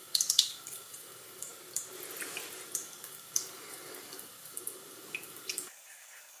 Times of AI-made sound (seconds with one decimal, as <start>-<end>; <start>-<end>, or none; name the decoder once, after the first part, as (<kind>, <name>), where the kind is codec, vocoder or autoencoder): 0.0-1.5 (codec, DAC); 2.8-6.4